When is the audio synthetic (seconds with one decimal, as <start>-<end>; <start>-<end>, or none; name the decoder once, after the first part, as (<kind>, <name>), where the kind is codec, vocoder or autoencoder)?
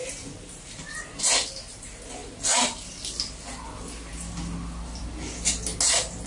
none